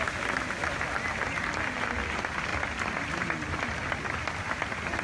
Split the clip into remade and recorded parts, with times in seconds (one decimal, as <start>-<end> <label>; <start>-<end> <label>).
0.0-5.0 recorded